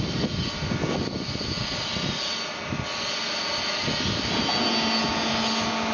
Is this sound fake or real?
real